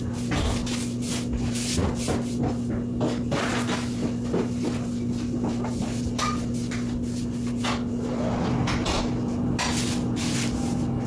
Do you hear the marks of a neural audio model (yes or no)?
no